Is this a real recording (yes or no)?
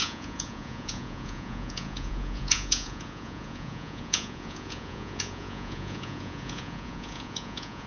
no